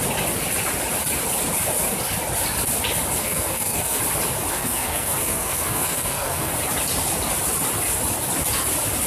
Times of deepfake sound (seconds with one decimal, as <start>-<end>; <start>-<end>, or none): 3.2-4.0; 4.5-6.5